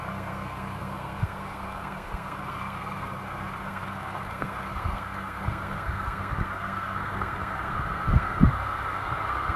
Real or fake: fake